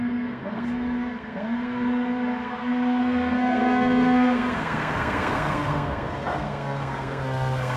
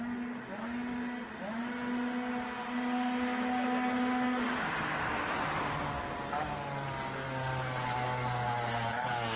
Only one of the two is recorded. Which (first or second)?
second